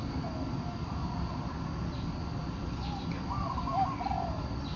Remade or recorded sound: recorded